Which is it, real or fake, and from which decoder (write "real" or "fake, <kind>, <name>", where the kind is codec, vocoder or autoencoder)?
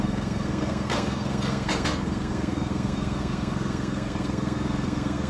fake, codec, SNAC